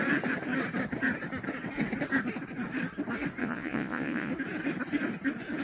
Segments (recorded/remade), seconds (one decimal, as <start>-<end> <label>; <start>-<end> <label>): 0.0-3.4 recorded; 3.4-4.3 remade; 4.3-5.6 recorded